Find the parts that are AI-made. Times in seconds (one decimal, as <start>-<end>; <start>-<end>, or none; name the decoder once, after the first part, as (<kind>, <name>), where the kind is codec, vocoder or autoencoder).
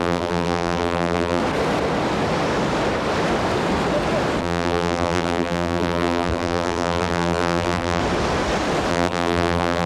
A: 0.0-1.4 (vocoder, BigVGAN v2); 4.4-8.0; 8.9-9.9